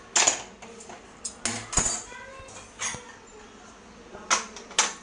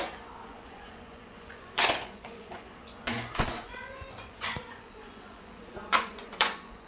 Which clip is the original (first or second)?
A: first